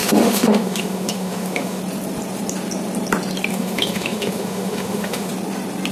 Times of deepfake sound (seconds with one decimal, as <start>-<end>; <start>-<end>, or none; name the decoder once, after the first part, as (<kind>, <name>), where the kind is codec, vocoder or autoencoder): 0.0-1.8 (autoencoder, DAC-VAE); 3.5-5.3